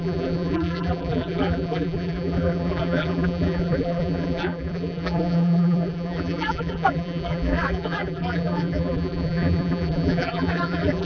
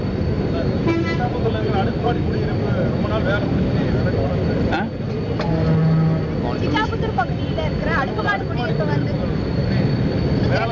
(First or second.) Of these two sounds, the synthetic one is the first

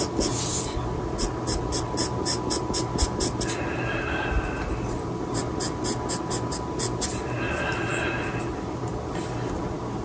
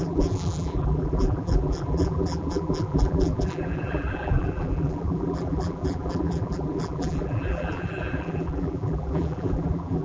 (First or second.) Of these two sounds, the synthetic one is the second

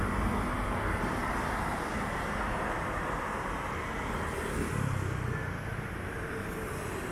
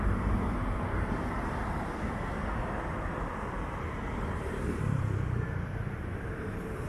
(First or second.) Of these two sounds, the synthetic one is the second